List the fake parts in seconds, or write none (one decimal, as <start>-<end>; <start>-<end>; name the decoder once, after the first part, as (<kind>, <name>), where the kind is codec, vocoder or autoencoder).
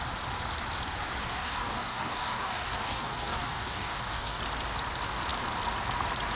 1.2-4.4 (codec, DAC)